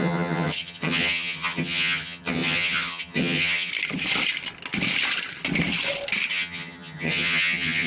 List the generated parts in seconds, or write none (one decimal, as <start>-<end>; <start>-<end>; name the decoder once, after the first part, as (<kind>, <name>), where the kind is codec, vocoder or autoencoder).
0.0-3.7 (vocoder, HiFi-GAN); 6.3-7.9